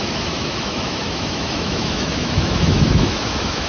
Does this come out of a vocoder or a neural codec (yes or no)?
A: yes